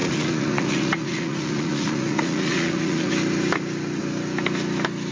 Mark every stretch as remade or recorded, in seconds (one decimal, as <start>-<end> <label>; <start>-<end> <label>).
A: 0.0-3.1 remade; 3.1-5.1 recorded